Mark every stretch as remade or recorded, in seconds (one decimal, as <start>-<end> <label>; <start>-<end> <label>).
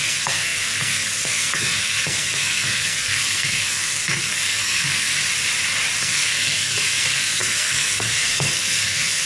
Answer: 0.0-5.2 remade; 5.2-6.0 recorded; 6.0-9.3 remade